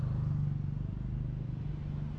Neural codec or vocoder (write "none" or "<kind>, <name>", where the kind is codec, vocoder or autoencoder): none